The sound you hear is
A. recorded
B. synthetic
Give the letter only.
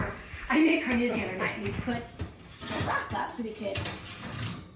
A